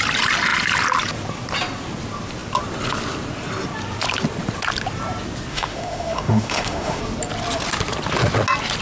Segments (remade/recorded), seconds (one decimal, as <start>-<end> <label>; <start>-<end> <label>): 0.0-5.5 recorded; 5.5-7.0 remade; 7.0-8.8 recorded